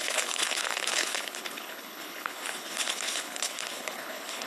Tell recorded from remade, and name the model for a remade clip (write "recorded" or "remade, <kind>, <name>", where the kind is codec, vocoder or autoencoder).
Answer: remade, codec, HILCodec